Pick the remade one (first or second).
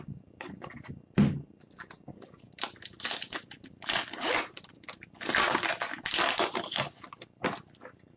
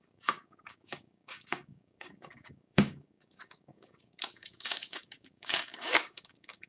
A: second